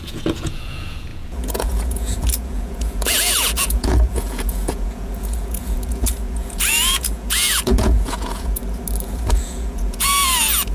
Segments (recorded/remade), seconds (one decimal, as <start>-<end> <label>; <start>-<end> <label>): 0.0-8.6 remade; 8.6-9.3 recorded; 9.3-10.7 remade